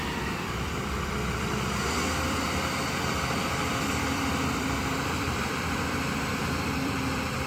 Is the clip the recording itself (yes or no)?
no